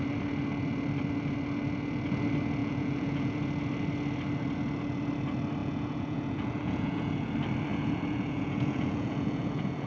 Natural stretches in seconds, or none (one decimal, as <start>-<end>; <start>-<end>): 0.0-2.6; 3.4-5.6; 7.3-7.7